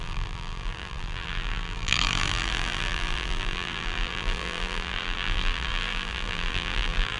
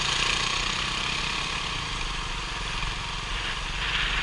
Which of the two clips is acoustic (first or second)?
second